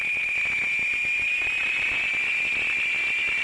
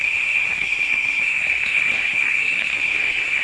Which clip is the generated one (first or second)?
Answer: second